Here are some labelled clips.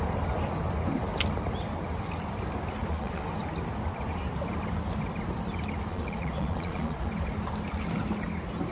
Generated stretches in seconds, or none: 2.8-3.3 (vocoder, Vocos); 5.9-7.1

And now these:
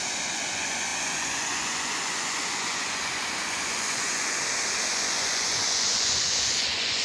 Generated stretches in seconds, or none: 0.0-4.4 (vocoder, Vocos); 4.9-7.0

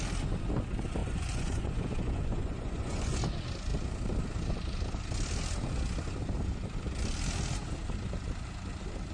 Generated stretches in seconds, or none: 1.0-3.2 (vocoder, Vocos)

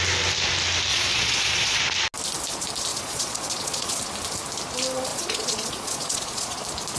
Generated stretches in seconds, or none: 0.9-1.8 (vocoder, Vocos); 2.9-4.0; 5.1-6.6